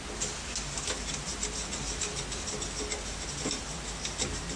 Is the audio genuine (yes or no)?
yes